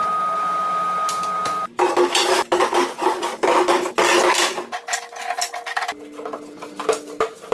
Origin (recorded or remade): recorded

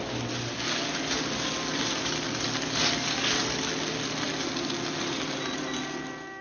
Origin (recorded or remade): recorded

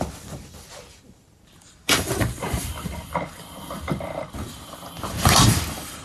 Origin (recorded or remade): remade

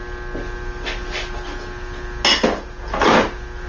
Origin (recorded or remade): recorded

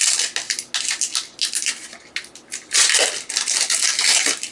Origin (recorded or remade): recorded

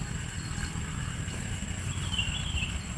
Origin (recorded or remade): recorded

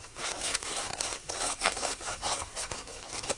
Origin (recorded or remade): remade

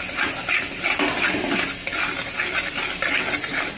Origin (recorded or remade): recorded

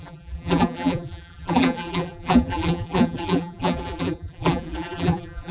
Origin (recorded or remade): remade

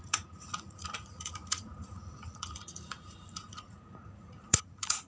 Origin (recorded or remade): remade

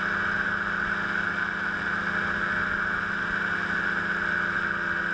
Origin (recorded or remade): recorded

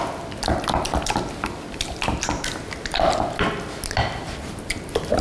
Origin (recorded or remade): recorded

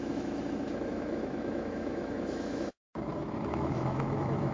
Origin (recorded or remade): remade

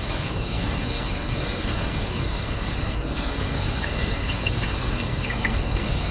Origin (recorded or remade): remade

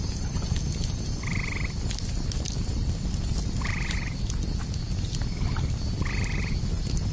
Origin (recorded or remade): recorded